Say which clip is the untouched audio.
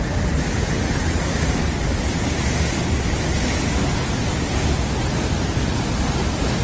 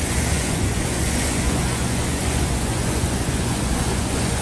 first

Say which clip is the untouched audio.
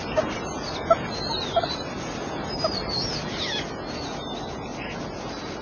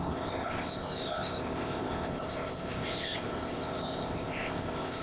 first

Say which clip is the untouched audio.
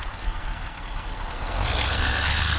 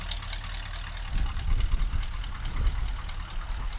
second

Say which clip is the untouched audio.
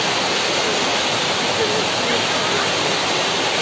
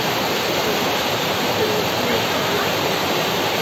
first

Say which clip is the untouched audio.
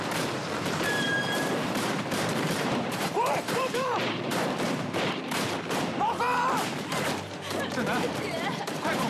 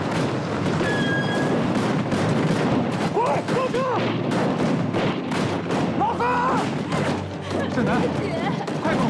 second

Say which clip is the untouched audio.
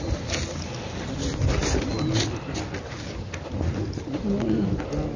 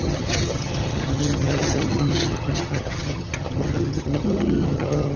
first